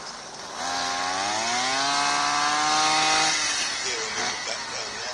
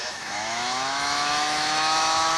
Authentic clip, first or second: first